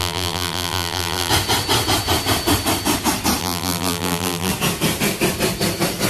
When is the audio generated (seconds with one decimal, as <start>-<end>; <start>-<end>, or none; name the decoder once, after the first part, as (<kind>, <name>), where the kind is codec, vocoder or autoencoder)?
0.0-1.3 (vocoder, BigVGAN v2); 3.4-4.5